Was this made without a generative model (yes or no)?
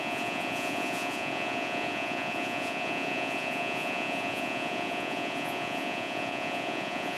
no